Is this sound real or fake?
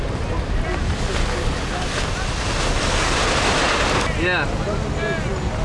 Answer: real